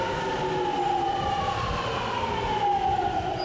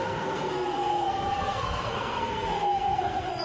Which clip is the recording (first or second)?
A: first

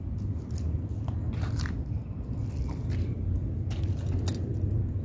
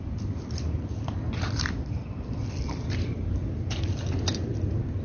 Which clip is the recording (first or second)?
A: first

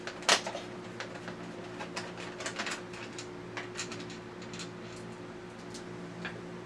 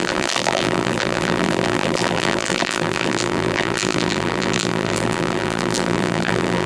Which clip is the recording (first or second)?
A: first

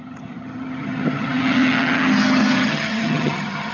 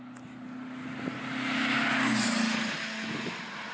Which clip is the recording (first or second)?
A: second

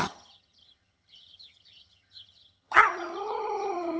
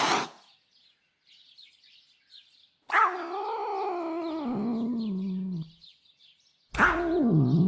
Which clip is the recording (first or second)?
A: second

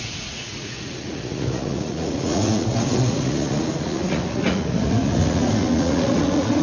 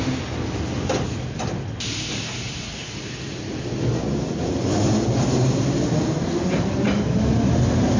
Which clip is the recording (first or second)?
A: second